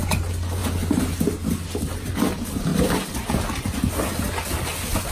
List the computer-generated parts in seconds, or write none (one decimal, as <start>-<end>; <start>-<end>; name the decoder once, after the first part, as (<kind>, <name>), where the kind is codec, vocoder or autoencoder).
none